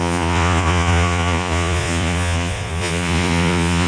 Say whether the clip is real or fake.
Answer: fake